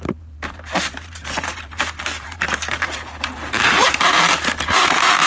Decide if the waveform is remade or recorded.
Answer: remade